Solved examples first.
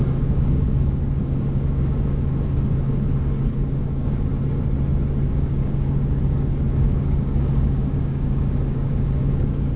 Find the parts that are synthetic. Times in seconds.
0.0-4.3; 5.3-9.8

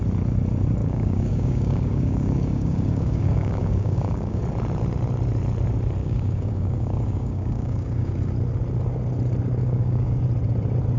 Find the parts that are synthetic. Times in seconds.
0.8-4.4; 6.0-8.1; 9.6-10.2

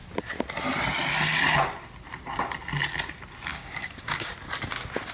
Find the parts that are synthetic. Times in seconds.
3.5-4.3

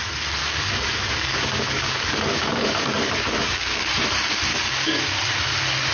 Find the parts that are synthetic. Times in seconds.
0.4-3.9; 4.5-5.0

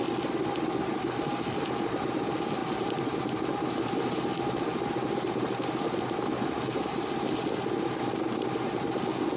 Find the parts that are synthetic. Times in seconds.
none

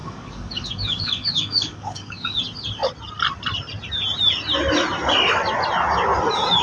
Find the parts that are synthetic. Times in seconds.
0.0-2.4

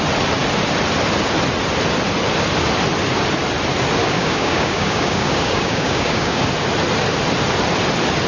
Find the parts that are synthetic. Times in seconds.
4.0-6.4

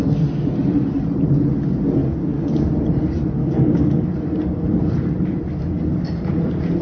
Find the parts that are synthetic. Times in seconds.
3.4-4.1